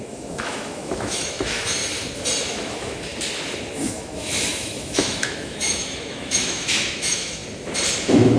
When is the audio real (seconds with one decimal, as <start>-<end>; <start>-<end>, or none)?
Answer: 1.8-2.4; 3.1-3.7; 7.4-8.0